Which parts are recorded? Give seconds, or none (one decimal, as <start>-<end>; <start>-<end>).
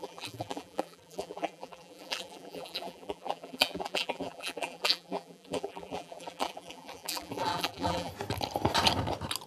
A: 8.1-9.5